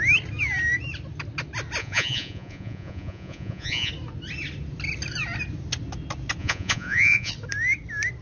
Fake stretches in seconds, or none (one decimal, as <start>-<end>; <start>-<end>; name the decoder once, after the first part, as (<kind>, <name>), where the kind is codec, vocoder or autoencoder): 1.8-3.9 (vocoder, Vocos); 6.4-7.3